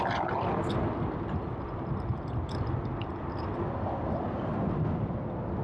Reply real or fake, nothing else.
real